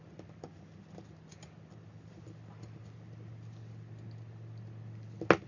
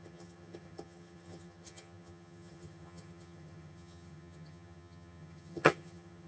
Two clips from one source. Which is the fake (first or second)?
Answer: second